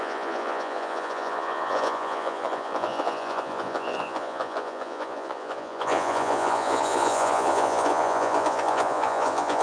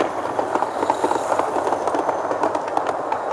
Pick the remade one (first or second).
first